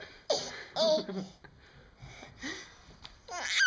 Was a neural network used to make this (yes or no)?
no